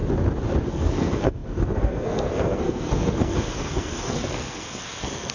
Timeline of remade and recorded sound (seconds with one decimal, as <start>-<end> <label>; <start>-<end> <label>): 0.0-0.7 recorded; 0.7-5.3 remade